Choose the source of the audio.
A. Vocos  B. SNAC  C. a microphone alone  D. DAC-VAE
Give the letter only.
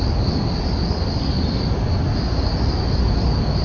C